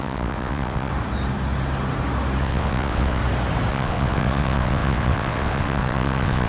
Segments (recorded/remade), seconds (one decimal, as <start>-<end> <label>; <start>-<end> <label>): 0.0-0.9 remade; 0.9-2.4 recorded; 2.4-3.2 remade; 3.2-3.7 recorded; 3.7-6.5 remade